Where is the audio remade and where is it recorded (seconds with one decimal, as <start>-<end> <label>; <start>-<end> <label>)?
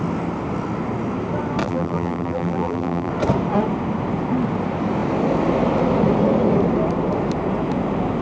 0.0-1.6 recorded; 1.6-3.1 remade; 3.1-8.2 recorded